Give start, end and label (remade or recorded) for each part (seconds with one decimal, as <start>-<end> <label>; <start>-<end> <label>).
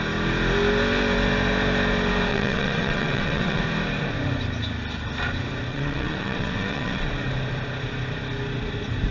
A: 0.0-2.3 recorded; 2.3-3.6 remade; 3.6-5.7 recorded; 5.7-7.1 remade; 7.1-9.1 recorded